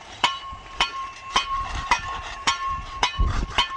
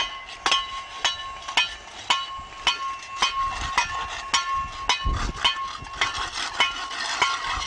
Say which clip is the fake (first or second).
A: first